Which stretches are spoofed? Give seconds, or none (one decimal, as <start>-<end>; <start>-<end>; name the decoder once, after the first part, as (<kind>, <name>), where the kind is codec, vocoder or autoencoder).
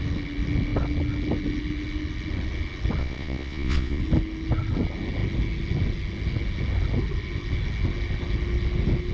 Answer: 3.0-4.0 (vocoder, Vocos)